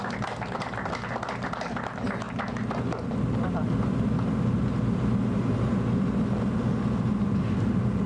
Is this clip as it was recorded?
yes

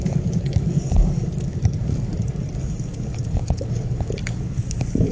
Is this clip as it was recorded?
no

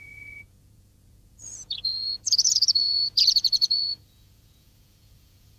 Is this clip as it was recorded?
no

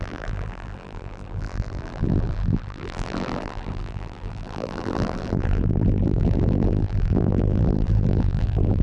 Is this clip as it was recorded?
no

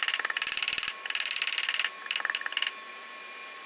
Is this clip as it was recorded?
no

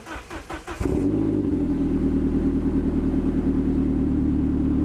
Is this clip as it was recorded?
yes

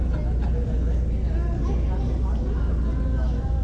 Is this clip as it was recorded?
yes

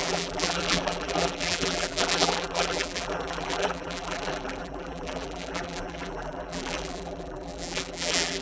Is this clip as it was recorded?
no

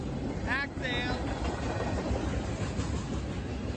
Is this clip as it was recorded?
yes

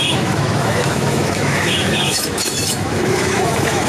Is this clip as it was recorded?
no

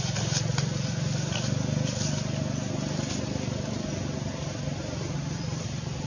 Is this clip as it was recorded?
yes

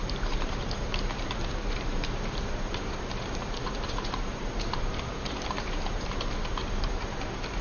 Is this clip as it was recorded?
no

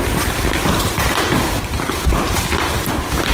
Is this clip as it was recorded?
yes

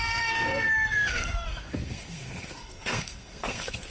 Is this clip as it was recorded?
no